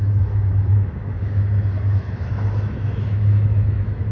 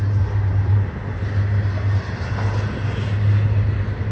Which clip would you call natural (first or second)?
second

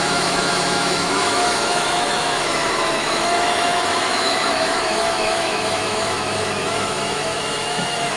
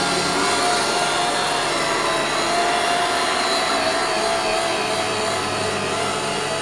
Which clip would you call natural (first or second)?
second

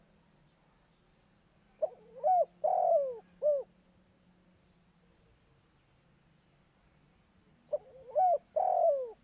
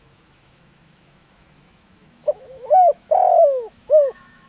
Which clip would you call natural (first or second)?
first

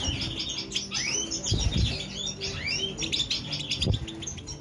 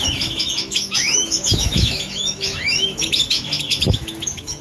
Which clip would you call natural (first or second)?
first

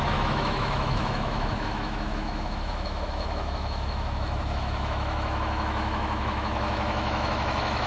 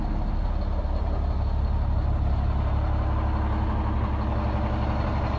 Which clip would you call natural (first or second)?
second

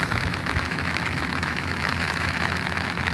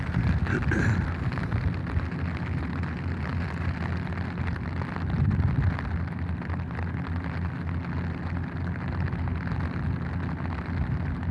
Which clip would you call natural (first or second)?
second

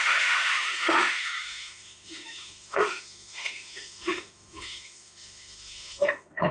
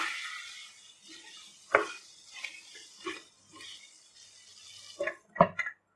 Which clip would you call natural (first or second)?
second